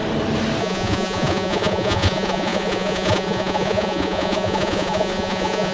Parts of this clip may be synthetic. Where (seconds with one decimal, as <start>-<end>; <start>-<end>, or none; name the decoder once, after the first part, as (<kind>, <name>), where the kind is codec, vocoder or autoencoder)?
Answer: 0.6-5.7 (vocoder, Vocos)